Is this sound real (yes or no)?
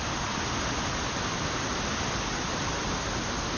yes